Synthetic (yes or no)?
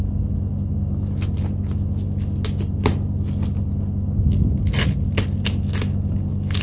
no